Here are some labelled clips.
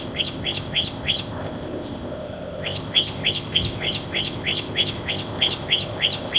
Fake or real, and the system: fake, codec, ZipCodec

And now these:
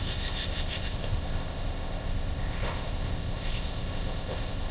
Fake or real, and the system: fake, codec, ZipCodec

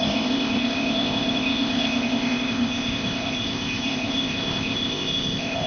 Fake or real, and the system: fake, codec, ZipCodec